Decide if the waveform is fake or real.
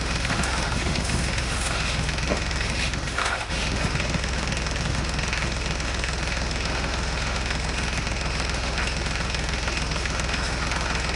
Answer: fake